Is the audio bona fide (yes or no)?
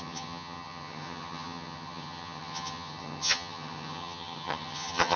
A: no